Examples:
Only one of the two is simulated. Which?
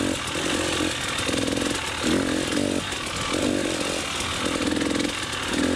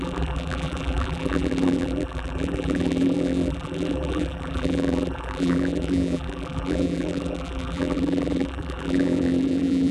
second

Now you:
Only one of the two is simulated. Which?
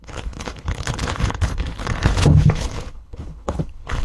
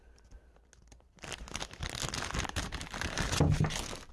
first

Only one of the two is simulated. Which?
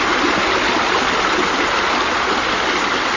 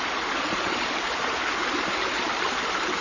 second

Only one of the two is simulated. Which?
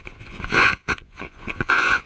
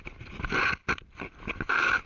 first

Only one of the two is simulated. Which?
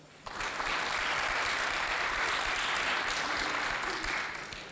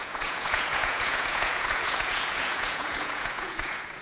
second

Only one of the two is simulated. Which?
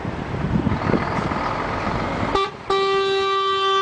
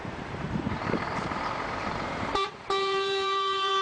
second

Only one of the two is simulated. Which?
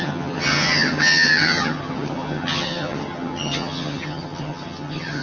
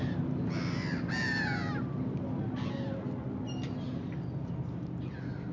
first